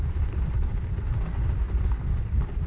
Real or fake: real